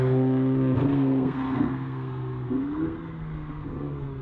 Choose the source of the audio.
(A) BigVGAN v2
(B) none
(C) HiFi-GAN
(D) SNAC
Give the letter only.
D